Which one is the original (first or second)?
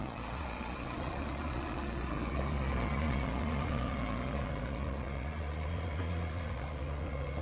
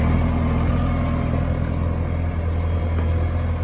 second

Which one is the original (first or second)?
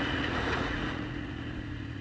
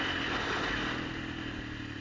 second